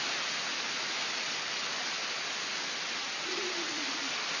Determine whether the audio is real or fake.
real